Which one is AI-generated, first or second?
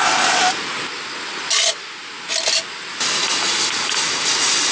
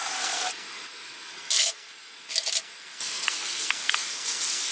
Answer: second